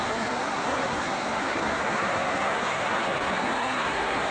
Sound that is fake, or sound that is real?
fake